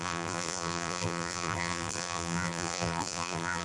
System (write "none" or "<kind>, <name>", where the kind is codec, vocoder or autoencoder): vocoder, BigVGAN v2